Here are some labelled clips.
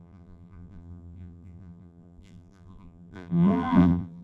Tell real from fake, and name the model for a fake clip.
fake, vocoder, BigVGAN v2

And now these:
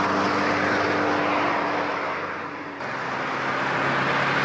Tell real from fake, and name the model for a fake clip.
real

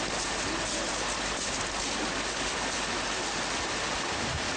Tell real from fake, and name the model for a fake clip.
real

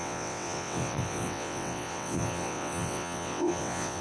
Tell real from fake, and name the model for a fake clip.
fake, vocoder, WaveNeXt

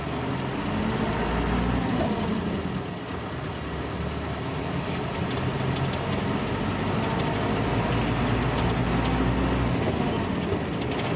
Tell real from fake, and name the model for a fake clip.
real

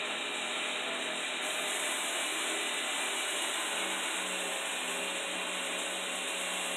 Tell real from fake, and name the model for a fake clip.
real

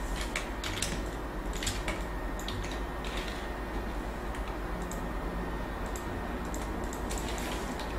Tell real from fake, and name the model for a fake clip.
real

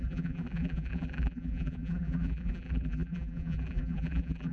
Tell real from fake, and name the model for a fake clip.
fake, vocoder, BigVGAN v2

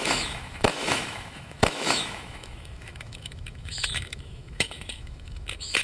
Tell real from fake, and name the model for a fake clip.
fake, autoencoder, DAC-VAE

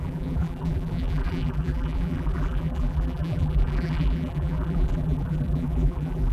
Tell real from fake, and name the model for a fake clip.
fake, vocoder, BigVGAN v2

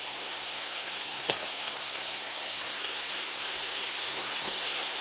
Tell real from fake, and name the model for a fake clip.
fake, codec, SNAC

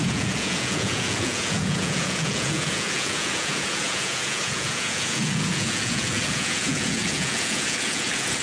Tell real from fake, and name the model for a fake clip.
fake, vocoder, Vocos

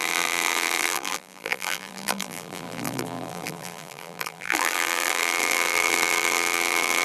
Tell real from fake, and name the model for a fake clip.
fake, vocoder, BigVGAN v2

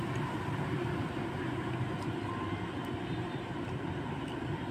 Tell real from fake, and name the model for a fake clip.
real